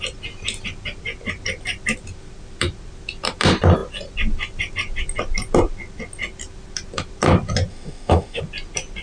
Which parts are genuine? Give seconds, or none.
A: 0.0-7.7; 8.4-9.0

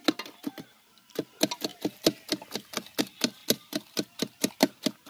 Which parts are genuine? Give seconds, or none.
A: 0.0-3.4; 4.5-5.1

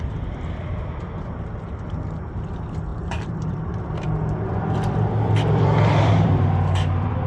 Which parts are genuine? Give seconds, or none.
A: 0.0-2.9

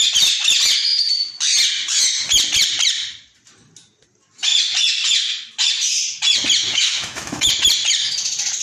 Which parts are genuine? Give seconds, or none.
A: 0.0-6.6; 7.5-8.6

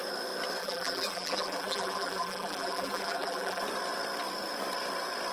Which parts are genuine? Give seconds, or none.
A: 0.0-0.6; 3.6-5.3